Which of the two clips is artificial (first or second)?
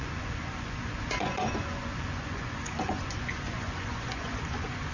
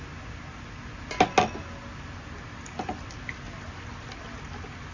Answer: first